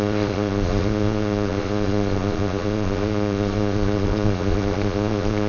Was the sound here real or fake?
fake